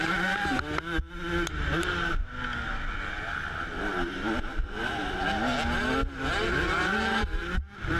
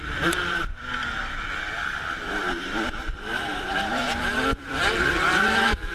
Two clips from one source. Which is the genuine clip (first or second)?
first